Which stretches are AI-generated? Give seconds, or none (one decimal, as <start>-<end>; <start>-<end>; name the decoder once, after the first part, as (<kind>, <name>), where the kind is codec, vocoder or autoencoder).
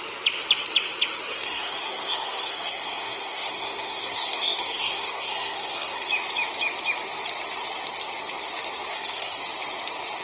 1.3-6.1 (codec, SNAC); 8.9-9.4